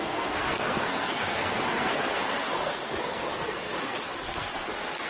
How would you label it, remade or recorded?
remade